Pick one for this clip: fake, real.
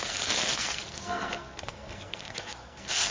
fake